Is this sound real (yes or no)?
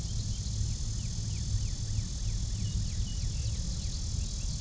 yes